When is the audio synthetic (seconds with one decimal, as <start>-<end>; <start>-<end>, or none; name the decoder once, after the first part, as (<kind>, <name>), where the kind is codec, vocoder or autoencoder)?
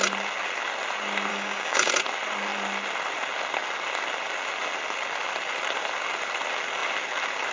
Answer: 1.3-1.9 (codec, DAC)